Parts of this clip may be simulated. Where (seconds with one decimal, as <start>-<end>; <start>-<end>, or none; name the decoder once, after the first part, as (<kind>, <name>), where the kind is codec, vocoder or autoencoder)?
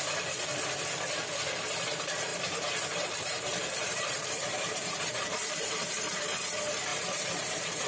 2.3-5.9 (vocoder, BigVGAN v2); 6.9-7.9